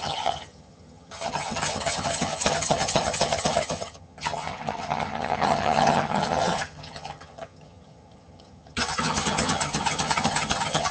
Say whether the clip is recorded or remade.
remade